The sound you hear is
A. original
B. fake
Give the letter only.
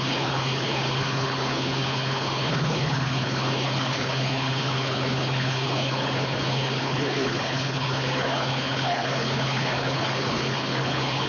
B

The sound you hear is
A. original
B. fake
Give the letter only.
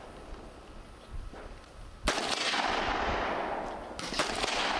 A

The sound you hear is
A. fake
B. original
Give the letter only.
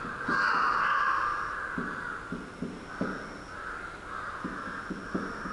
B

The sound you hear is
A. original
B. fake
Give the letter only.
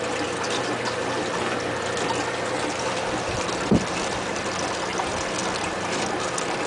A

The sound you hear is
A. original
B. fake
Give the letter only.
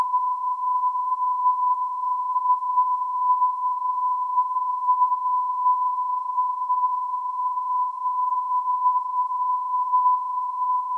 B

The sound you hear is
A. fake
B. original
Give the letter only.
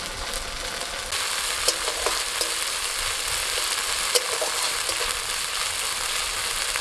B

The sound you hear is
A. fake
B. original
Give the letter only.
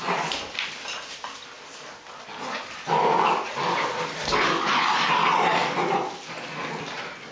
B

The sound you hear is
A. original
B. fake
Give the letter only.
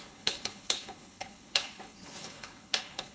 B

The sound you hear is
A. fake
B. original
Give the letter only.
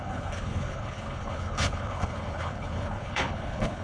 A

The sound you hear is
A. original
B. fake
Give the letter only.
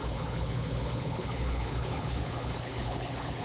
B